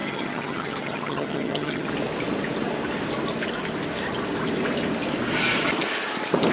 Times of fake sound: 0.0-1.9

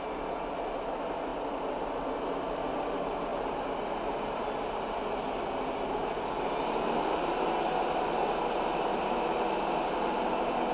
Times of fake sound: none

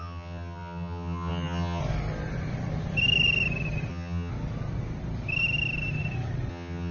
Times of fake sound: 0.0-1.8; 3.9-4.3; 6.5-6.9